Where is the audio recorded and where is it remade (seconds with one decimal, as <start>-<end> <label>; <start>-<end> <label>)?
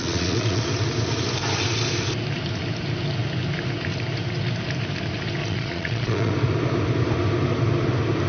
0.0-0.6 remade; 0.6-5.4 recorded; 5.4-6.3 remade; 6.3-8.3 recorded